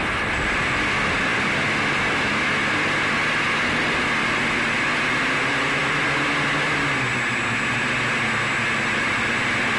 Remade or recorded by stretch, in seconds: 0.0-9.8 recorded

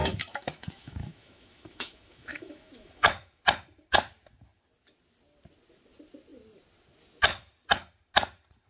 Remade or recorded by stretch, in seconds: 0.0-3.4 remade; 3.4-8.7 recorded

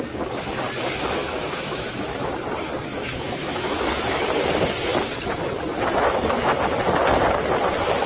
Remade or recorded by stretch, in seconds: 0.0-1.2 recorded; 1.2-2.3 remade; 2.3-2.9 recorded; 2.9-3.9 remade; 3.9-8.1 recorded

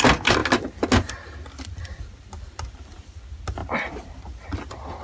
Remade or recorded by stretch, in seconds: 0.0-5.0 recorded